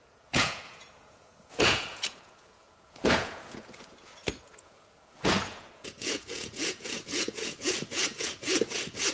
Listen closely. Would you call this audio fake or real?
fake